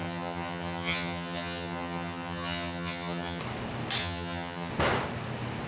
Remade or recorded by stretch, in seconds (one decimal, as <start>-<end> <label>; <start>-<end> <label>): 0.0-3.4 remade; 3.4-4.0 recorded; 4.0-4.7 remade; 4.7-5.7 recorded